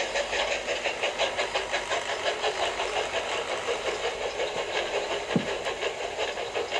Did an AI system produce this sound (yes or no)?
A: no